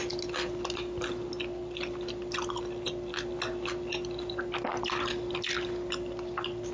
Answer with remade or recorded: recorded